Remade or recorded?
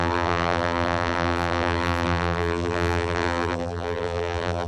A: remade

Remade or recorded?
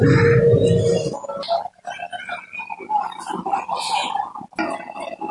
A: recorded